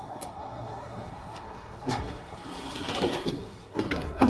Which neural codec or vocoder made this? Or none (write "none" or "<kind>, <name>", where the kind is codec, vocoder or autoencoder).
codec, SNAC